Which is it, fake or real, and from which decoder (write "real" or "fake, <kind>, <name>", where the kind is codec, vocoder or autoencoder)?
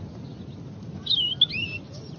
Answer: real